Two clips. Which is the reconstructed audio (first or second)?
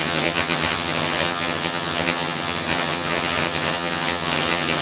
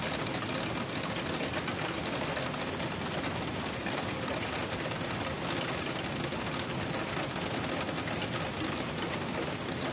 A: first